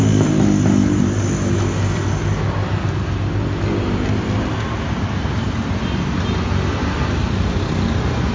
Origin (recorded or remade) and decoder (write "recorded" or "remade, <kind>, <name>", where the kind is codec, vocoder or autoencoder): recorded